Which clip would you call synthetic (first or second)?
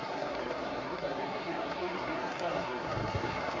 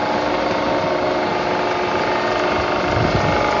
first